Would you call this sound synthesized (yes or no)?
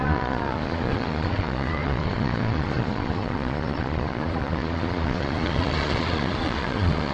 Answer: yes